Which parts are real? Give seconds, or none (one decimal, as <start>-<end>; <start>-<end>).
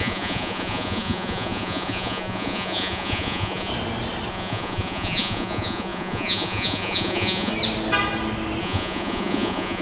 3.7-4.3; 7.5-8.6